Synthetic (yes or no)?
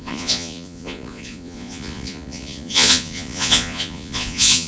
yes